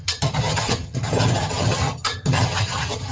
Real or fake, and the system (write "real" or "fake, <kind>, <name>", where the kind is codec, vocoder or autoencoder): fake, vocoder, HiFi-GAN